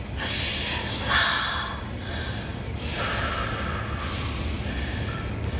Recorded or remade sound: recorded